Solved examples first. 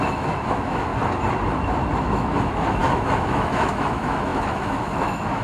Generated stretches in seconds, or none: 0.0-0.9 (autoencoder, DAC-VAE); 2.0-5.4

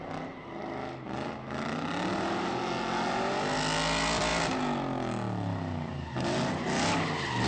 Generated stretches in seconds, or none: none

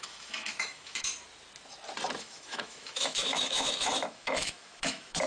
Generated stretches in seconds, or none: 0.0-1.1 (autoencoder, DAC-VAE); 2.2-5.3

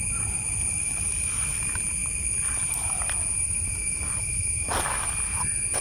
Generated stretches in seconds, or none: none

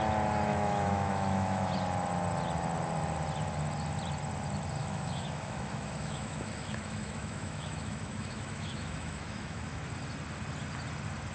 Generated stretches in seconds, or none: 0.5-1.7 (autoencoder, DAC-VAE); 4.8-9.8

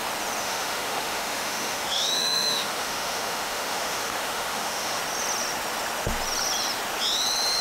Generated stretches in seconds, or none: 0.4-5.0 (autoencoder, DAC-VAE)

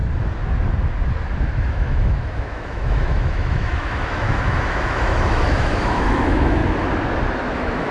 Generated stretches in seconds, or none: 1.5-6.6 (autoencoder, DAC-VAE); 7.5-7.9